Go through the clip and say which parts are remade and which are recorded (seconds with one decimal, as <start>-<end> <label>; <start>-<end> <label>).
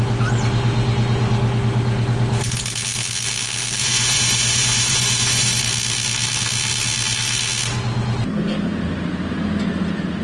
0.0-3.8 recorded; 3.8-5.6 remade; 5.6-10.2 recorded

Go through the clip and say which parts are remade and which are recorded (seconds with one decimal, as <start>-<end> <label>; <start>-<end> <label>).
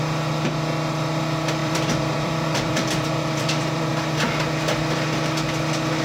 0.0-1.6 recorded; 1.6-3.9 remade; 3.9-6.0 recorded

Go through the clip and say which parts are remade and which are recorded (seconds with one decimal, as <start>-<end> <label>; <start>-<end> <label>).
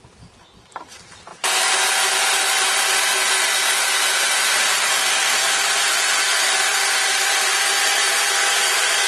0.0-5.2 recorded; 5.2-7.6 remade; 7.6-8.0 recorded; 8.0-9.1 remade